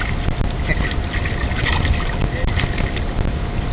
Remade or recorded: recorded